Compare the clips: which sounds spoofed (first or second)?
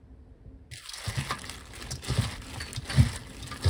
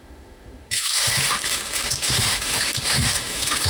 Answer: second